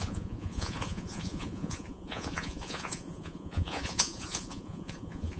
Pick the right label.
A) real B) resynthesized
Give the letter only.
B